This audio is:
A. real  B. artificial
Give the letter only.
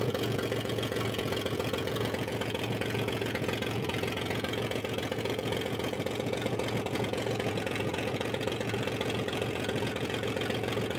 B